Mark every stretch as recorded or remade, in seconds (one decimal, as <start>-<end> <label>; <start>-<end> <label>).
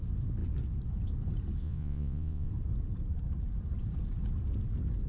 0.0-1.6 recorded; 1.6-2.5 remade; 2.5-5.1 recorded